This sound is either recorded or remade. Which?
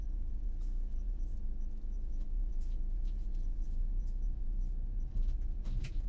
remade